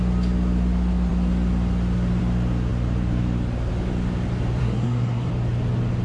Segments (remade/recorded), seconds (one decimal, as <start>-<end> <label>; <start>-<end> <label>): 0.0-4.6 recorded; 4.6-5.3 remade; 5.3-6.0 recorded